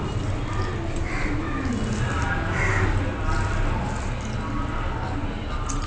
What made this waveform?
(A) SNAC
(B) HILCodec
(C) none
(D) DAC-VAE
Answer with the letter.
C